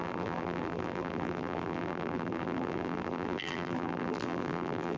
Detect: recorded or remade remade